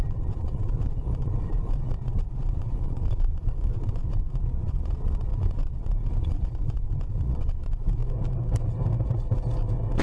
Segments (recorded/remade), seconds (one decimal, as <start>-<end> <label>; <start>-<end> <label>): 0.0-8.0 remade; 8.0-10.0 recorded